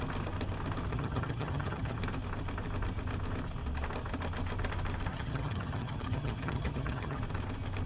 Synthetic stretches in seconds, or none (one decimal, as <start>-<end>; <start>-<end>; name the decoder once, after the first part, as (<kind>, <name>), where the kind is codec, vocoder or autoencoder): 0.9-2.0 (vocoder, HiFi-GAN); 5.1-7.2